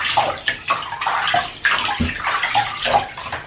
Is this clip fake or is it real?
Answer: real